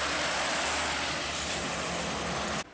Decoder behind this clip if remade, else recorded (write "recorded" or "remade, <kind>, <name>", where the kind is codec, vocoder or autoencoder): recorded